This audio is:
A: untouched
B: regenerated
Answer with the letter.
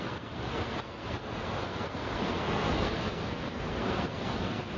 B